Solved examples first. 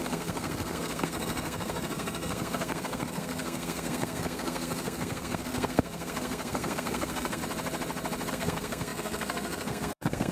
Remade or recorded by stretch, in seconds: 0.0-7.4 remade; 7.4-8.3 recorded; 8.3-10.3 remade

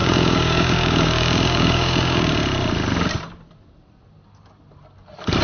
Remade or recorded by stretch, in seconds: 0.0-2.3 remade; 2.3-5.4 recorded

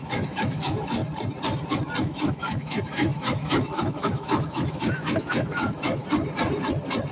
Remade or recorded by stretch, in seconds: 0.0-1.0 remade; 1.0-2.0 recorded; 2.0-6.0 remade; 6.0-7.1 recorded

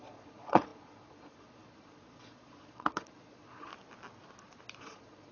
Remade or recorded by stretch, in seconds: 0.0-3.7 remade; 3.7-4.8 recorded; 4.8-5.3 remade

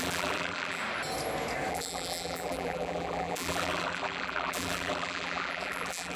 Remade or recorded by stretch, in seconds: 0.0-0.8 remade; 0.8-1.7 recorded; 1.7-6.2 remade

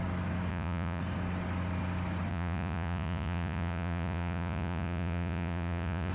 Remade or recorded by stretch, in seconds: 0.0-0.5 recorded; 0.5-1.0 remade; 1.0-2.3 recorded; 2.3-6.1 remade